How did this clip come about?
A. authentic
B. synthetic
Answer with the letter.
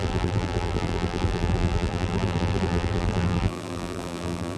B